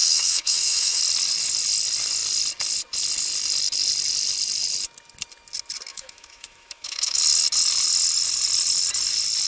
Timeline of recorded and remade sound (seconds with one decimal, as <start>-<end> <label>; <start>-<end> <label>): 0.0-1.0 remade; 1.0-5.9 recorded; 5.9-7.2 remade; 7.2-9.5 recorded